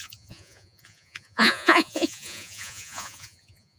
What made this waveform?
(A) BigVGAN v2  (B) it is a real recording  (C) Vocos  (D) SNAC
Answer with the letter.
C